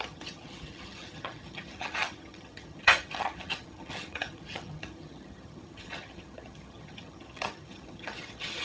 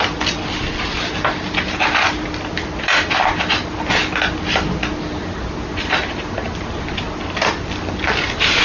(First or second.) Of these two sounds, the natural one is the second